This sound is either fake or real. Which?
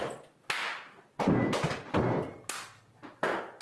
real